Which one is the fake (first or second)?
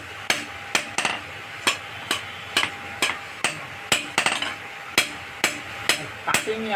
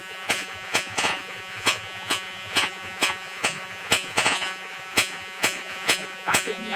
second